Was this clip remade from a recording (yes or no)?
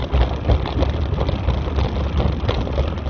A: no